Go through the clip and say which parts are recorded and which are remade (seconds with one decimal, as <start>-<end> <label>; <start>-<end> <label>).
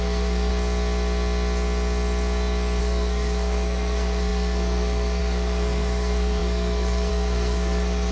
0.0-0.5 remade; 0.5-2.8 recorded; 2.8-8.1 remade